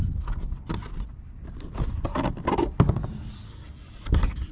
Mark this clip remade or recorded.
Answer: recorded